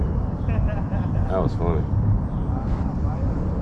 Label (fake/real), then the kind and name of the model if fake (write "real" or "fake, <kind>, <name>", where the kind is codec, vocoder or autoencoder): real